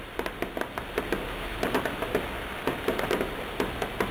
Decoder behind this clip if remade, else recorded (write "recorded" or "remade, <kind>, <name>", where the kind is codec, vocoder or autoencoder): recorded